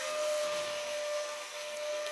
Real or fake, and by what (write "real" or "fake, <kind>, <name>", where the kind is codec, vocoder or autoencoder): fake, codec, SNAC